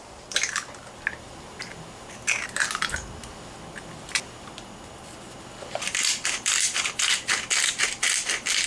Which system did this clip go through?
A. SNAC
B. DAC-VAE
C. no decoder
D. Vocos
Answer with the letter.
C